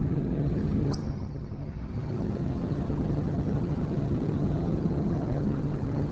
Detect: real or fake fake